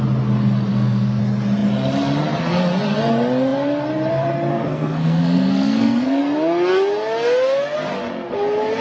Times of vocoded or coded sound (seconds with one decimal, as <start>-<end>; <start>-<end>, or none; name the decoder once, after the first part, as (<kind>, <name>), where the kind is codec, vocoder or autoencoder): 0.7-1.2 (codec, SNAC); 4.5-6.2